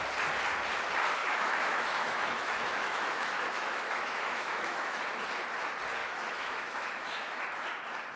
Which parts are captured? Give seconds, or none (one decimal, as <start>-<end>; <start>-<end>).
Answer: 0.0-1.2; 5.0-6.0; 7.4-8.2